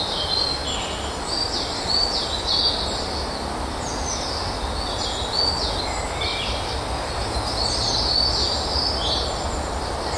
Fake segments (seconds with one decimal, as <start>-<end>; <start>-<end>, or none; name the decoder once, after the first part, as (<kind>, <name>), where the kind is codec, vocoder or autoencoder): none